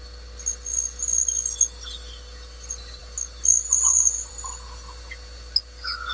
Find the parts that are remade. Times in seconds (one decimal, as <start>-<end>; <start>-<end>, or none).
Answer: none